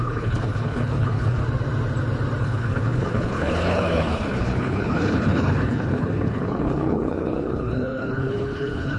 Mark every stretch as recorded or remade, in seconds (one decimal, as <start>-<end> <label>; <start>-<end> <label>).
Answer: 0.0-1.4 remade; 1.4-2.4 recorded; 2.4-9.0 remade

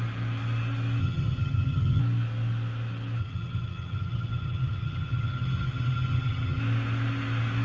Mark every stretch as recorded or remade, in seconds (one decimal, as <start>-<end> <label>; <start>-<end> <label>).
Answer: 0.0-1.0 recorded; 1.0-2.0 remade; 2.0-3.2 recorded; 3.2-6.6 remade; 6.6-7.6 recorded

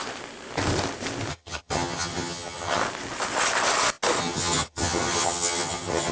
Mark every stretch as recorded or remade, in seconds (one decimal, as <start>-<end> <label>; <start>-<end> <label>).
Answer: 0.0-1.3 recorded; 1.3-2.8 remade; 2.8-4.2 recorded; 4.2-6.1 remade

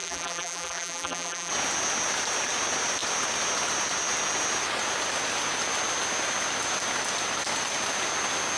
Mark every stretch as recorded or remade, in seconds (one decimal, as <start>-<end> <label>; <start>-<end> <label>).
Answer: 0.0-1.5 remade; 1.5-8.6 recorded

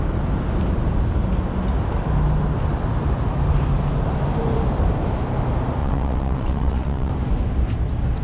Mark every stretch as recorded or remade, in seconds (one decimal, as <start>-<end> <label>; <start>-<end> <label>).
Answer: 0.0-5.8 recorded; 5.8-7.1 remade; 7.1-8.2 recorded

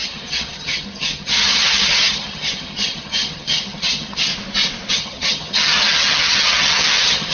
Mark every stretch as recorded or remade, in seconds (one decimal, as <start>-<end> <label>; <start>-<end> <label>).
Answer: 0.0-4.3 remade; 4.3-4.9 recorded; 4.9-7.3 remade